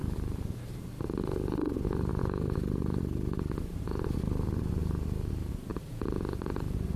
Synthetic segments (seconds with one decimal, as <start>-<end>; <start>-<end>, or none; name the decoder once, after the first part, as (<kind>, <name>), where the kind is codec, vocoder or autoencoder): 0.0-7.0 (vocoder, BigVGAN v2)